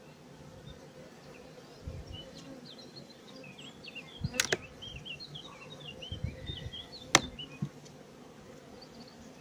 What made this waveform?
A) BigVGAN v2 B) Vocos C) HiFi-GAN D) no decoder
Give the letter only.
D